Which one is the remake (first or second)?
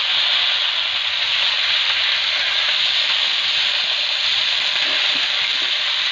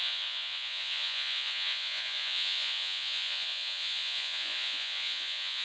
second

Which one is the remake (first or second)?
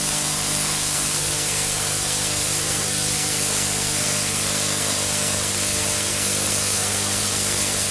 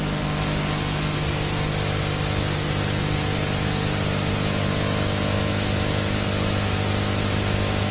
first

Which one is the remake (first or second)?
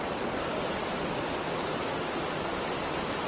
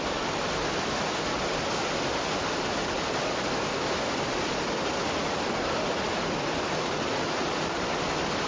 first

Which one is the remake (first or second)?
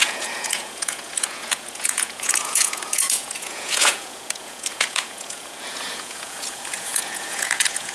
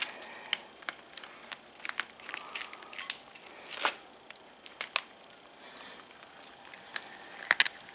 first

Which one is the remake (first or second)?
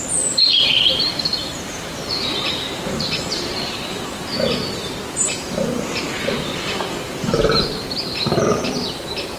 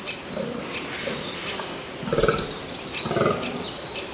first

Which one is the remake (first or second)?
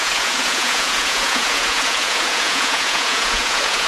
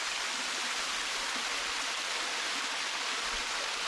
first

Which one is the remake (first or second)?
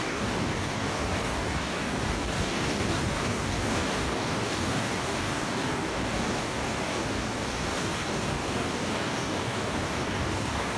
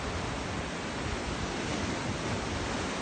first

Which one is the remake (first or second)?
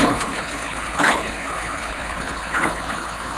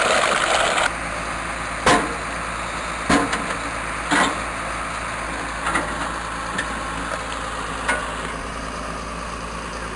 first